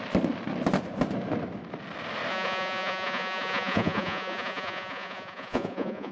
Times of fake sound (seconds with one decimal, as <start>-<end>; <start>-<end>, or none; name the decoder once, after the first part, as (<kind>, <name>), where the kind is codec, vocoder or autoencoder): 2.3-6.1 (vocoder, Vocos)